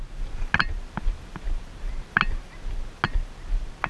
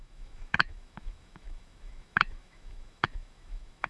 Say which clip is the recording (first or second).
first